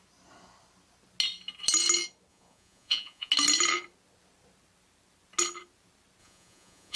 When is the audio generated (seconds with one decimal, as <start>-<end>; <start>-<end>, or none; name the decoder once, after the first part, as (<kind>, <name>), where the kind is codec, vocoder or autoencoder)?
2.3-3.3 (vocoder, Vocos); 6.2-7.0